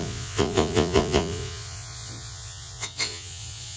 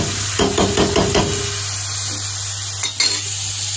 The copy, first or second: first